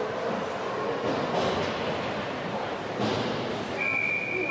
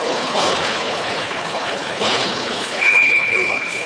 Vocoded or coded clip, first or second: second